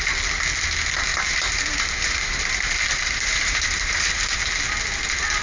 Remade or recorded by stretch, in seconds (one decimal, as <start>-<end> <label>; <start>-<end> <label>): 0.0-1.1 recorded; 1.1-4.3 remade; 4.3-5.4 recorded